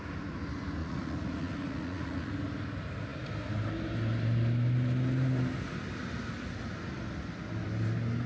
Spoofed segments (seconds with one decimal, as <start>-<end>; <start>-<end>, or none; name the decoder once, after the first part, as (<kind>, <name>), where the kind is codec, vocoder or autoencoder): 0.8-2.3 (vocoder, Vocos)